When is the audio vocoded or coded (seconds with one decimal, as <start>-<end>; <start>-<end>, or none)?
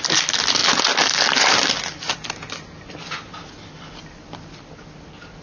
none